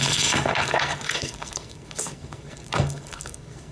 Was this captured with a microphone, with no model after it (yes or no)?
no